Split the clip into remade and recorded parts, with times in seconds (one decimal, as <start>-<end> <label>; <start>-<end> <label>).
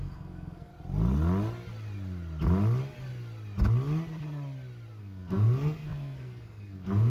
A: 0.0-0.7 remade; 0.7-5.0 recorded; 5.0-7.1 remade